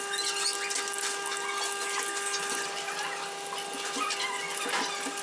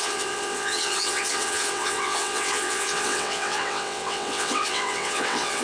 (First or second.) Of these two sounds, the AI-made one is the second